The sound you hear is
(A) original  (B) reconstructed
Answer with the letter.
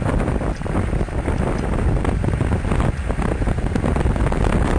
B